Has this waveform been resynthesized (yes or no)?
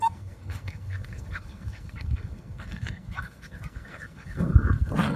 yes